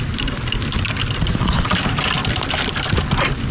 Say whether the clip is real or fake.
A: real